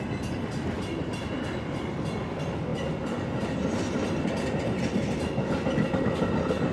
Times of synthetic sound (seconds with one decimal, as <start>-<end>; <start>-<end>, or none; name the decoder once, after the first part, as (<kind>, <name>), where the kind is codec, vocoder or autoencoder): none